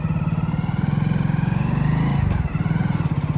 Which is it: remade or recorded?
recorded